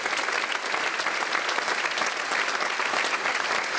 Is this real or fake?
real